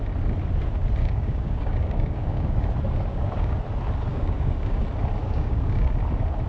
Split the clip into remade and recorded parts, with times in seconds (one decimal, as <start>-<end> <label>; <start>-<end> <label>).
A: 0.0-1.0 recorded; 1.0-2.7 remade; 2.7-3.1 recorded; 3.1-3.6 remade; 3.6-4.1 recorded; 4.1-4.8 remade; 4.8-5.2 recorded; 5.2-6.0 remade; 6.0-6.5 recorded